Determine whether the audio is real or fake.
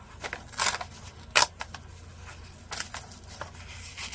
real